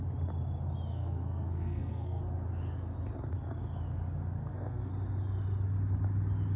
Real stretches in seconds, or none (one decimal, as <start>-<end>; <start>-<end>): 0.0-0.9; 2.2-4.4; 4.9-6.6